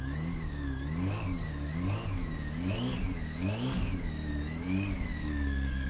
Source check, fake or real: fake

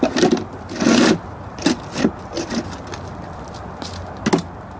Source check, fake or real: real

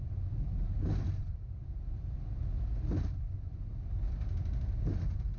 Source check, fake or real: real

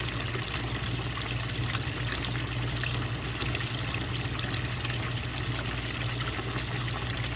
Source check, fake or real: real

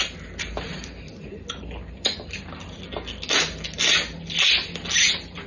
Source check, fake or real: real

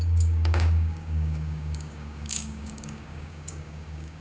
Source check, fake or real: fake